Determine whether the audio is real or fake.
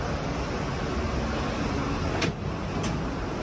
real